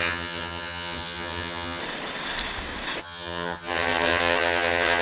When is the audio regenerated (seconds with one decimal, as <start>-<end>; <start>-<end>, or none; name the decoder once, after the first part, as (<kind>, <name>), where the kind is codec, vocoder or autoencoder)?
0.0-1.8 (vocoder, HiFi-GAN); 3.0-5.0